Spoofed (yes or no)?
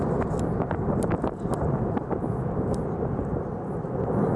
no